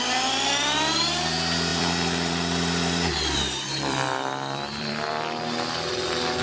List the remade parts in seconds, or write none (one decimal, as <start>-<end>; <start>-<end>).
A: 1.7-5.4